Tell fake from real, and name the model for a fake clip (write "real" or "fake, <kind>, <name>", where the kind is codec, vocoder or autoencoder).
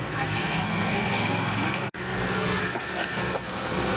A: fake, codec, SNAC